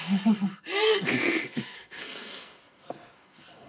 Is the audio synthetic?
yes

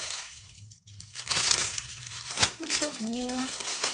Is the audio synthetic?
yes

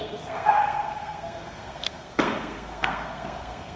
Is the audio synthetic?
yes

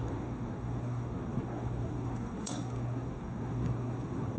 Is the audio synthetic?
yes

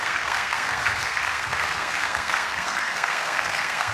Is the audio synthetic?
yes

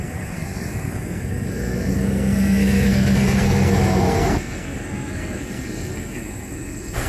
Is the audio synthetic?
yes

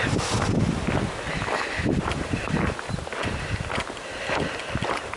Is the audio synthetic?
no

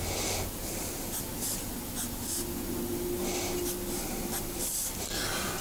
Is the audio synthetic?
no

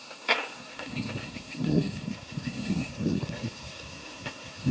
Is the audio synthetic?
yes